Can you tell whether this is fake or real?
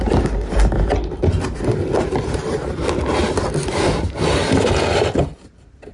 real